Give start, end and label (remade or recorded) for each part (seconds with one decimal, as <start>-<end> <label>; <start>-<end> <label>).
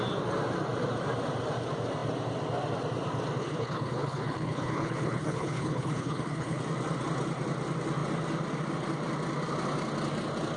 0.0-3.4 recorded; 3.4-6.6 remade; 6.6-10.6 recorded